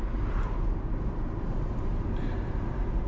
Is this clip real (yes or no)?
yes